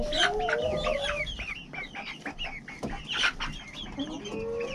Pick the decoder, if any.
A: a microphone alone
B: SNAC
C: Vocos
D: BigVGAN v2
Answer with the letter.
A